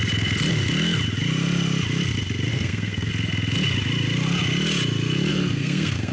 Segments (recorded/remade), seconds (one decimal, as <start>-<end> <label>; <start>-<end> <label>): 0.0-2.5 recorded; 2.5-3.1 remade; 3.1-5.3 recorded; 5.3-6.1 remade